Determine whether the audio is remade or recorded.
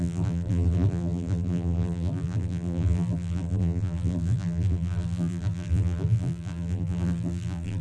remade